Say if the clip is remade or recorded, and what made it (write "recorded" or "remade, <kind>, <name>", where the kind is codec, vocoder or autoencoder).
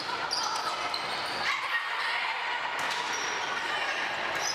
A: recorded